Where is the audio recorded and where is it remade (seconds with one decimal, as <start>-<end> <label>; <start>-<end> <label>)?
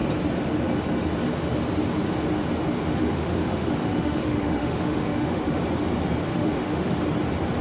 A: 0.0-3.0 recorded; 3.0-5.6 remade; 5.6-6.3 recorded; 6.3-7.0 remade; 7.0-7.6 recorded